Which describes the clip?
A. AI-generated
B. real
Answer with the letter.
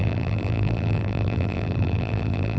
A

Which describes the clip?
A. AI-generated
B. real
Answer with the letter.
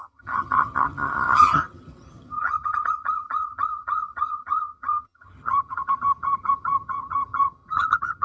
A